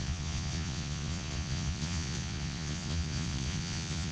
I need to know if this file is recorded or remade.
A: remade